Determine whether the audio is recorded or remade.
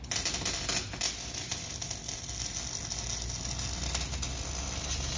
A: recorded